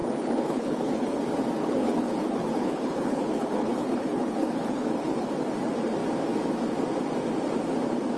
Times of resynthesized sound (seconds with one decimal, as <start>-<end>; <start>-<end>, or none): 0.0-1.2; 1.6-5.3